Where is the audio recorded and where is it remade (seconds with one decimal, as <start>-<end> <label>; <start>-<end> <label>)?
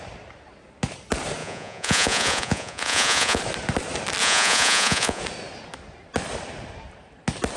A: 0.0-1.4 recorded; 1.4-3.4 remade; 3.4-4.2 recorded; 4.2-5.2 remade; 5.2-7.6 recorded